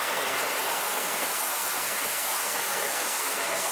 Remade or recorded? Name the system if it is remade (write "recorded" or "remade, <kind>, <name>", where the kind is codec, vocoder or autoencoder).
remade, codec, SNAC